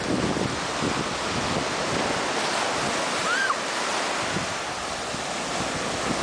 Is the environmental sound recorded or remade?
recorded